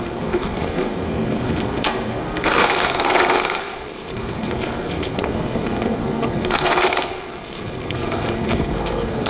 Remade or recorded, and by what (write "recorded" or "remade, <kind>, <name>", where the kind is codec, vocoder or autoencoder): remade, codec, SNAC